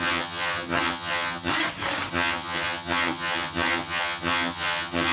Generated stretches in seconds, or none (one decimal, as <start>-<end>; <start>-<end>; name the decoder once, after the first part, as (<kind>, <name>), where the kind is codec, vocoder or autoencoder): 0.0-1.5 (vocoder, HiFi-GAN); 2.1-5.1